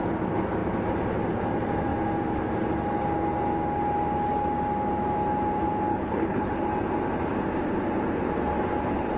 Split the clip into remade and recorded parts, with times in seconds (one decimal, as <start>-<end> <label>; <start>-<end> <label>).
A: 0.0-5.9 recorded; 5.9-6.7 remade; 6.7-9.2 recorded